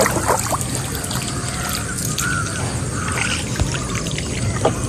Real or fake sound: real